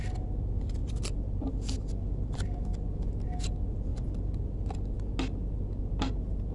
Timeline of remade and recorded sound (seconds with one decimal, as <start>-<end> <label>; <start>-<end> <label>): 0.0-6.5 recorded